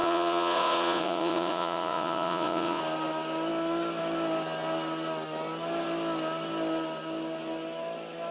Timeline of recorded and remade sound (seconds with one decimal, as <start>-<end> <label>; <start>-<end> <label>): 0.0-2.8 remade; 2.8-8.3 recorded